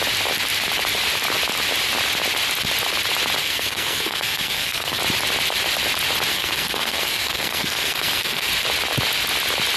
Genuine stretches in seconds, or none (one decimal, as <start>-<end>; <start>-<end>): 0.0-3.4; 5.0-6.3; 8.5-9.8